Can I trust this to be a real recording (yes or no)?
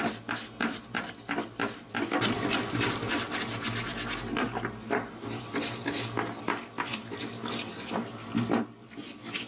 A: yes